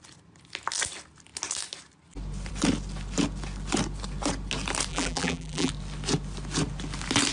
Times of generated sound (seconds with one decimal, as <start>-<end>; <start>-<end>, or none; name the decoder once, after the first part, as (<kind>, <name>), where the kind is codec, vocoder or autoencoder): 4.9-5.7 (vocoder, BigVGAN v2)